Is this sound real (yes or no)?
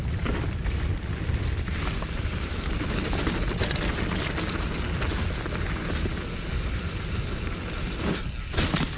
yes